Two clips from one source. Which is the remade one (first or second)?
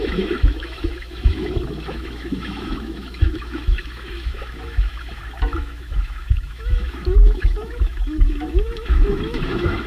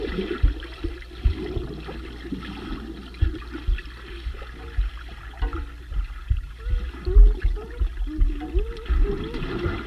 first